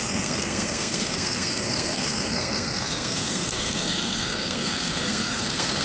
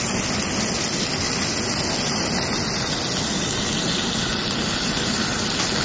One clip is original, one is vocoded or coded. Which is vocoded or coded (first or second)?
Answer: first